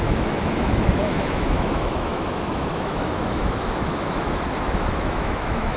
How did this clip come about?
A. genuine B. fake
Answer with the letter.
B